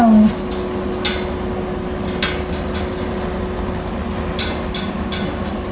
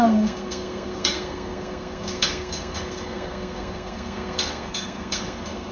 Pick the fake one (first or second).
second